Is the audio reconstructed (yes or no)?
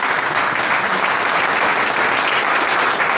no